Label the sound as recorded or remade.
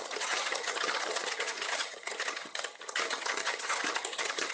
remade